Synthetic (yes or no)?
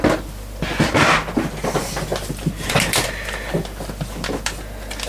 no